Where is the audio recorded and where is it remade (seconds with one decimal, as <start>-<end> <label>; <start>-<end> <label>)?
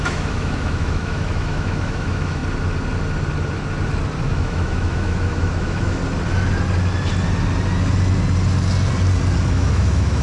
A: 0.0-2.4 remade; 2.4-4.2 recorded; 4.2-6.0 remade; 6.0-9.5 recorded; 9.5-10.2 remade